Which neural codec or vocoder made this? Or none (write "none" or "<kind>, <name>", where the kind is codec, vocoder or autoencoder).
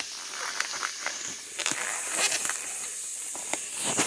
none